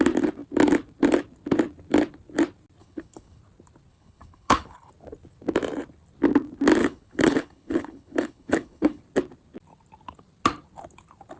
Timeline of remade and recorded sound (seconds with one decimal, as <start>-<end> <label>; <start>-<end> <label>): 0.0-2.8 recorded; 2.8-3.4 remade; 3.4-3.9 recorded; 3.9-4.9 remade; 4.9-6.8 recorded; 6.8-9.0 remade; 9.0-11.4 recorded